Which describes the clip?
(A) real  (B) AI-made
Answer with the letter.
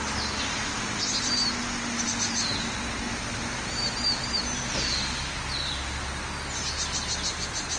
A